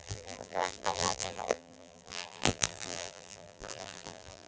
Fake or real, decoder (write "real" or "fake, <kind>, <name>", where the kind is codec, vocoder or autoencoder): fake, vocoder, BigVGAN v2